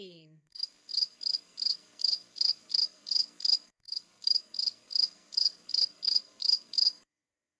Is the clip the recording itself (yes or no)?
no